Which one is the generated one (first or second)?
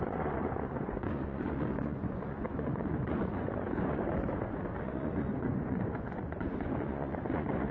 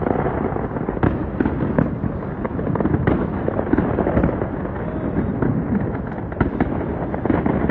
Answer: first